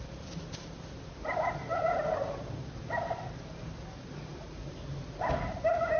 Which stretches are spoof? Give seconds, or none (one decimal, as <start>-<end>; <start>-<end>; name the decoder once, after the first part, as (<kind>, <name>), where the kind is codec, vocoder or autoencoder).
none